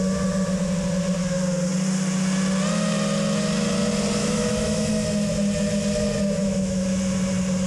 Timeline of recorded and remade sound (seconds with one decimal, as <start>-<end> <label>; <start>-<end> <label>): 0.0-4.2 recorded; 4.2-4.9 remade; 4.9-6.4 recorded; 6.4-7.0 remade; 7.0-7.7 recorded